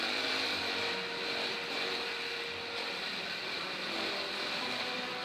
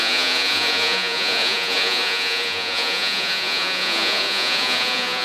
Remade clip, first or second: second